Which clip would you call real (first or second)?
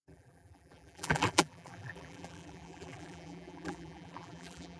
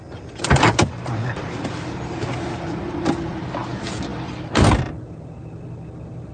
second